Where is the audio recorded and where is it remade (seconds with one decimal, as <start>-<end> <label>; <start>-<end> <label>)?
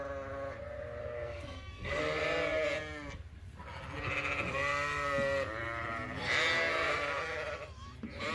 0.0-1.0 recorded; 1.0-2.0 remade; 2.0-8.3 recorded